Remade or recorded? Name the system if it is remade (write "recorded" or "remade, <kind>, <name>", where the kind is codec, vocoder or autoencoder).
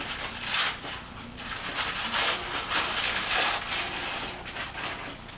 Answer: recorded